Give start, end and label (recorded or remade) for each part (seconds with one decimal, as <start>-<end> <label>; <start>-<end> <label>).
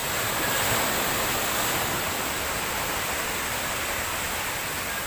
0.0-5.1 recorded